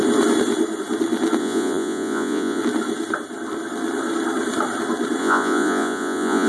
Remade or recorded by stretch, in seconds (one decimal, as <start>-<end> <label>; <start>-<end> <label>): 0.0-1.4 recorded; 1.4-2.6 remade; 2.6-5.2 recorded; 5.2-6.5 remade